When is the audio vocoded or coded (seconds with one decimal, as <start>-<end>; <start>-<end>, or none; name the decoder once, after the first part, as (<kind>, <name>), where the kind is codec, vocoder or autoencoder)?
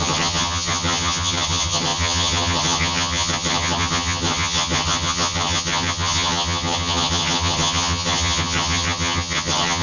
0.0-9.8 (vocoder, HiFi-GAN)